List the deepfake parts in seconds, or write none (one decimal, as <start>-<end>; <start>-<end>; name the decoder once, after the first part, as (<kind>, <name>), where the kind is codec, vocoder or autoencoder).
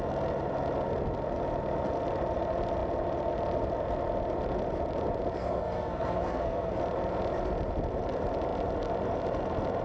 5.4-6.8 (codec, SNAC)